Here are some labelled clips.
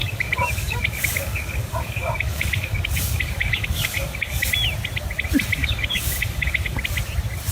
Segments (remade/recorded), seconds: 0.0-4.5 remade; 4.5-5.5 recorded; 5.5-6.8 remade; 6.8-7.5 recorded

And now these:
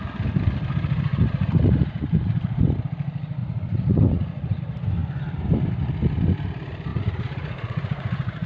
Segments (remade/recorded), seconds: 0.0-1.1 recorded; 1.1-2.6 remade; 2.6-3.4 recorded; 3.4-4.6 remade; 4.6-6.9 recorded; 6.9-8.5 remade